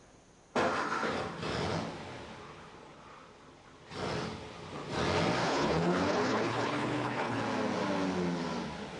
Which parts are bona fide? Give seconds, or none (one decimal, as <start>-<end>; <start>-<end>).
0.0-5.4; 7.4-9.0